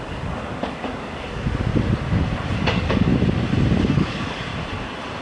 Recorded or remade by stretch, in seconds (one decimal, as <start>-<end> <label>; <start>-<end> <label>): 0.0-1.7 remade; 1.7-2.6 recorded; 2.6-3.1 remade; 3.1-3.9 recorded; 3.9-4.5 remade; 4.5-5.2 recorded